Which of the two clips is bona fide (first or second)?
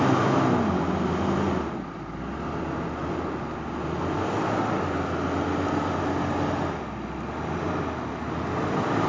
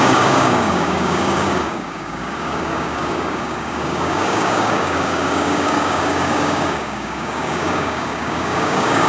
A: first